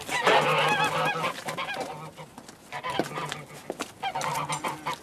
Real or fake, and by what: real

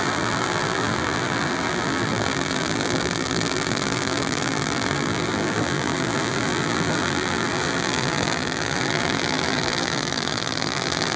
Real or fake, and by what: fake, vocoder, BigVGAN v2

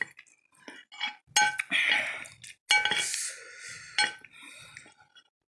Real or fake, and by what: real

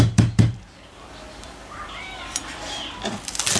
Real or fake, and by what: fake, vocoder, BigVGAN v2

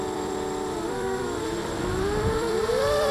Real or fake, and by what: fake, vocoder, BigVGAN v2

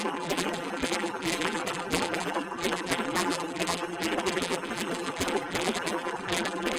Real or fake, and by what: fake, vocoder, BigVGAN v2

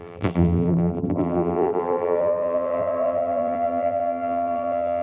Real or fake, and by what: fake, vocoder, BigVGAN v2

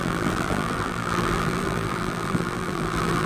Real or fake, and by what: fake, vocoder, BigVGAN v2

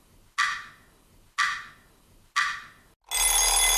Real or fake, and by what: real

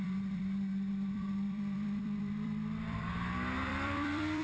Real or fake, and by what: fake, vocoder, BigVGAN v2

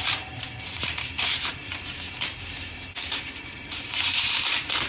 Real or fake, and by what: fake, vocoder, BigVGAN v2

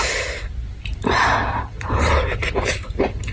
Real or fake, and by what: fake, vocoder, BigVGAN v2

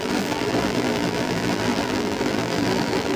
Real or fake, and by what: fake, vocoder, BigVGAN v2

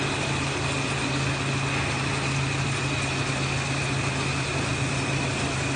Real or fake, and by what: real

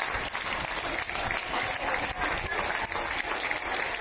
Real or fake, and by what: real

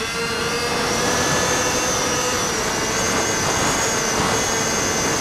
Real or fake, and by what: real